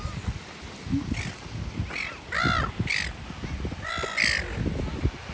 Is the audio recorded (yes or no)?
yes